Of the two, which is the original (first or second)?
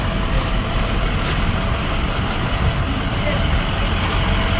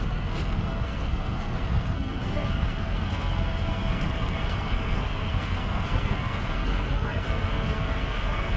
first